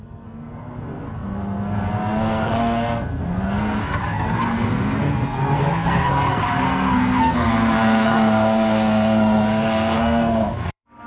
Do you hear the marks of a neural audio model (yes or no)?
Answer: yes